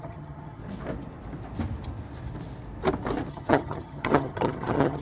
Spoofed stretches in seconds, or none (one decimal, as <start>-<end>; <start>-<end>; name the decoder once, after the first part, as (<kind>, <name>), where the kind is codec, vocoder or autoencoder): 0.0-0.6 (vocoder, HiFi-GAN); 3.3-5.0

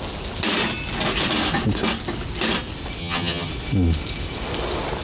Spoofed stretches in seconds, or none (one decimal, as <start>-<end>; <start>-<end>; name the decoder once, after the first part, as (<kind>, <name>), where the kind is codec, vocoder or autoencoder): 3.0-3.5 (vocoder, HiFi-GAN)

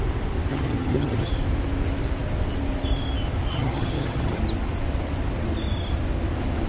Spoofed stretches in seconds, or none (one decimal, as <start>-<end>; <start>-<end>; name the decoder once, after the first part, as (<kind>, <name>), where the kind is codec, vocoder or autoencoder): 0.5-1.3 (vocoder, HiFi-GAN); 3.5-4.4

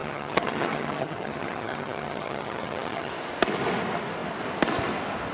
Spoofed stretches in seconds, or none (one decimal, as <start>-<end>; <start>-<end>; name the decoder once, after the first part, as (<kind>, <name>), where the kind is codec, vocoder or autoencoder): 0.0-3.1 (vocoder, HiFi-GAN)

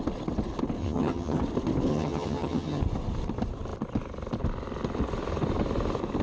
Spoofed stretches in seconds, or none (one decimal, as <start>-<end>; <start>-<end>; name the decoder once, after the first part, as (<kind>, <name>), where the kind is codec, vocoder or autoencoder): 0.8-1.4 (vocoder, HiFi-GAN); 1.9-2.8

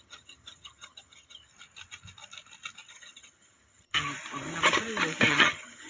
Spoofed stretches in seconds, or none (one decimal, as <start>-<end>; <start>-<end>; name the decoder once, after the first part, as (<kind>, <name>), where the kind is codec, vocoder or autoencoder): 0.0-1.5 (vocoder, HiFi-GAN); 2.9-4.1; 5.3-5.9